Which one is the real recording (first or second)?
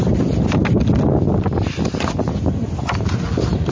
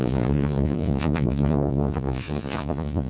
first